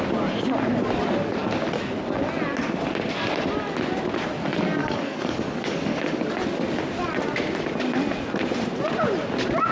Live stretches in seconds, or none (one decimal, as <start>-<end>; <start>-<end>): 0.0-4.8; 6.3-9.7